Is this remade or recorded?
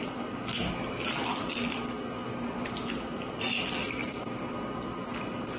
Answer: recorded